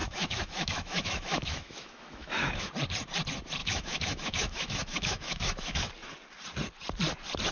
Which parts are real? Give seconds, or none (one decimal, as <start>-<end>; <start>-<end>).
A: 2.7-3.6; 5.9-7.5